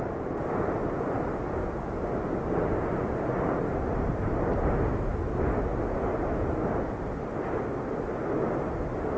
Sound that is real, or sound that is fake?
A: real